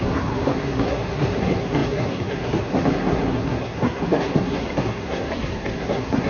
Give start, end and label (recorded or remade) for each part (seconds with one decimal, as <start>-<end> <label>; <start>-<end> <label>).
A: 0.0-6.3 remade